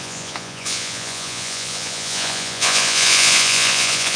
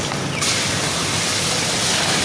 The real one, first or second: second